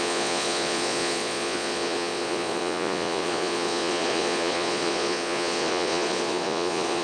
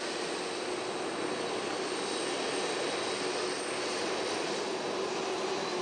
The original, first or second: second